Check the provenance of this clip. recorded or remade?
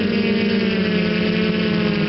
recorded